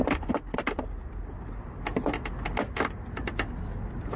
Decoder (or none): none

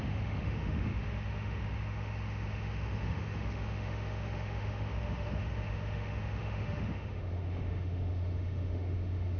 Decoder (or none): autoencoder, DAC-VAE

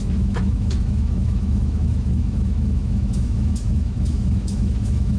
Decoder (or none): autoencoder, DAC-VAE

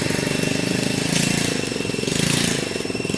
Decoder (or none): none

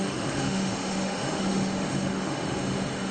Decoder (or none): autoencoder, DAC-VAE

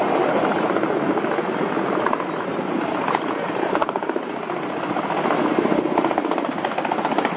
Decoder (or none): none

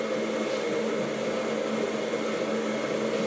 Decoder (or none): none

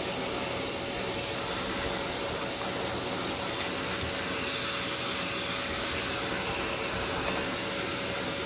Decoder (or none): none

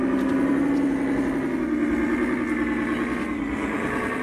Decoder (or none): none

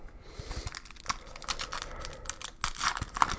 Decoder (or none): none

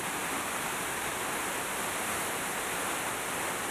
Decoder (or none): none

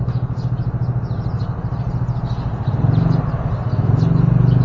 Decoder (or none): none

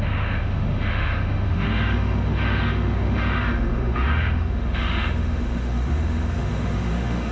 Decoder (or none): autoencoder, DAC-VAE